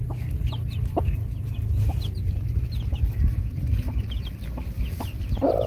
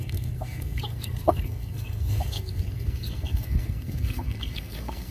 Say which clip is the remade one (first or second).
second